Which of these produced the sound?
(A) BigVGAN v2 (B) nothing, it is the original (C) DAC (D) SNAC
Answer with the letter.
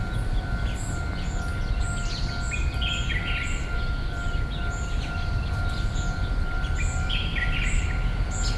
B